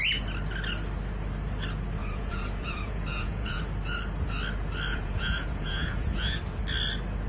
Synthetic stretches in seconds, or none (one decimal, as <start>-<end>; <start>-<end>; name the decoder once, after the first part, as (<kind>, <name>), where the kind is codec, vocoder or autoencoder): 2.0-3.6 (vocoder, Vocos); 4.9-6.4